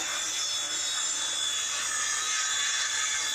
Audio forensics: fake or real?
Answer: real